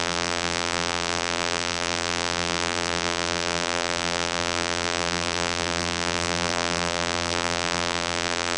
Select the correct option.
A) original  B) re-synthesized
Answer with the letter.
B